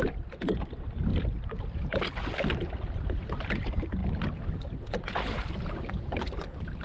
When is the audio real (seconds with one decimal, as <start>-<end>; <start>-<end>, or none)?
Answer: 0.0-6.8